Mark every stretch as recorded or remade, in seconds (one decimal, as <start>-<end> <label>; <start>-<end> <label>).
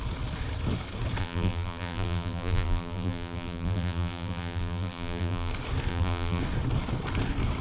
0.0-1.2 recorded; 1.2-5.5 remade; 5.5-5.9 recorded; 5.9-6.4 remade; 6.4-7.6 recorded